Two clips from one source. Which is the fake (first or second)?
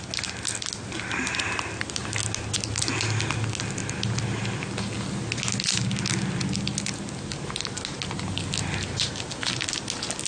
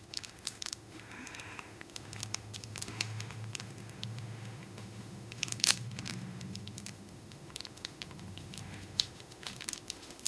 second